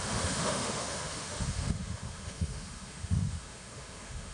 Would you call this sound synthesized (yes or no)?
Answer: yes